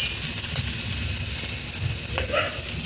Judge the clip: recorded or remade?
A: recorded